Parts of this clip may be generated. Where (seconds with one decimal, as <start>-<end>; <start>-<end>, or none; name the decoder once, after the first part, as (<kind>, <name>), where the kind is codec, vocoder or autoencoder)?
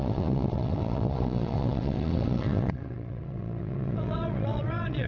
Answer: 0.0-5.1 (vocoder, WaveNeXt)